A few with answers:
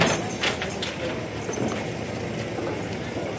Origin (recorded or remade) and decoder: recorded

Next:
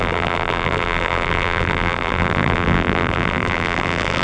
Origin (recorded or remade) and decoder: remade, vocoder, BigVGAN v2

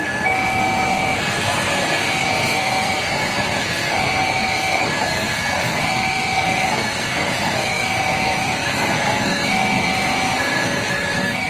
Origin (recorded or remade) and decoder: remade, codec, SNAC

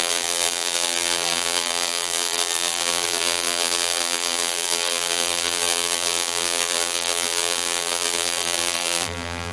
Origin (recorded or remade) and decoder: remade, vocoder, BigVGAN v2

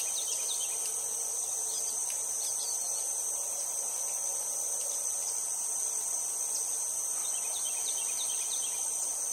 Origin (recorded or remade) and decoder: recorded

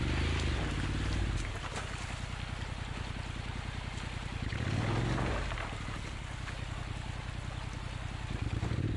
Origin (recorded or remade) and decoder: recorded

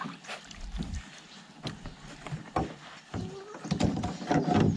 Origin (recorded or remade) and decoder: recorded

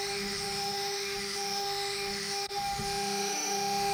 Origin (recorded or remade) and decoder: remade, autoencoder, DAC-VAE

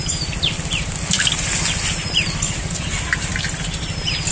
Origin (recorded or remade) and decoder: recorded